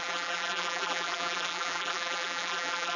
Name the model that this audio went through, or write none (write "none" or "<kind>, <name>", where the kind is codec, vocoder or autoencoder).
vocoder, BigVGAN v2